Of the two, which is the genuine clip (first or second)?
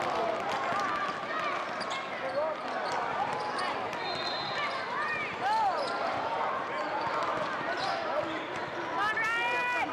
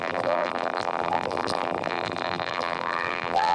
first